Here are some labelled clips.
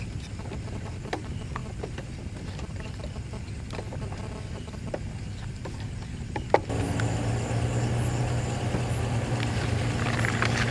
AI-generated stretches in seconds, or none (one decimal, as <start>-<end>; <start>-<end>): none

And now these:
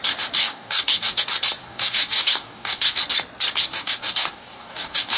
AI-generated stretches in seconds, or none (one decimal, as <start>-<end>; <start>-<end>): 0.4-1.2; 1.6-3.0; 3.7-5.2

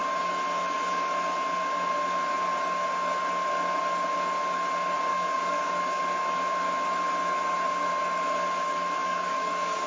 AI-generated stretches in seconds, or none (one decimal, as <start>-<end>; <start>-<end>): 5.1-6.0; 9.0-9.9

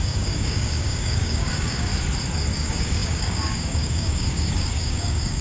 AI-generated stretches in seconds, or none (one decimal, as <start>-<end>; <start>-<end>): 0.0-1.9; 2.5-5.4

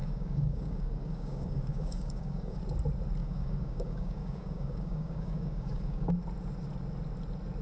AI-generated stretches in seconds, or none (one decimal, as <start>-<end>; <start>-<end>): 0.0-2.6; 3.2-6.1

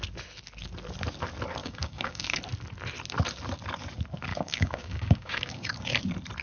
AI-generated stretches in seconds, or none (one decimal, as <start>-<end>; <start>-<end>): 1.6-2.4; 4.3-6.0

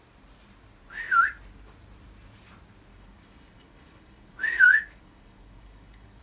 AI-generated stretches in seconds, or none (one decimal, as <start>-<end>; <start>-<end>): 2.9-6.2

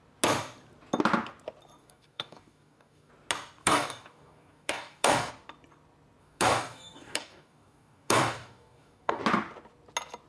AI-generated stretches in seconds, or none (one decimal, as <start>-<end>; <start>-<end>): 1.8-3.1; 3.6-5.3; 6.2-9.2